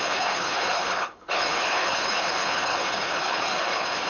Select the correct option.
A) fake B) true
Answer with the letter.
A